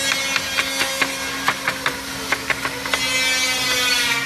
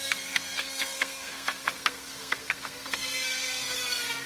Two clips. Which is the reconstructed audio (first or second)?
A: second